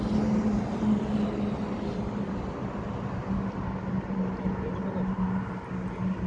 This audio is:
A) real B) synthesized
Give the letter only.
A